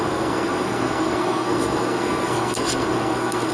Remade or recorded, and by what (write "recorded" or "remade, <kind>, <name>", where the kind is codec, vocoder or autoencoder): remade, codec, SNAC